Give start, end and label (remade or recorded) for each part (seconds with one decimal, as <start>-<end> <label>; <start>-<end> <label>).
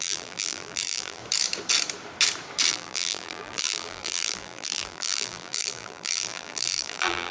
0.0-1.2 remade; 1.2-2.7 recorded; 2.7-7.3 remade